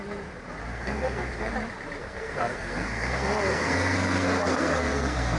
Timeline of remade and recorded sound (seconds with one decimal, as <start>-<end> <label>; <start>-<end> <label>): 0.0-0.7 recorded; 0.7-1.5 remade; 1.5-2.0 recorded; 2.0-5.4 remade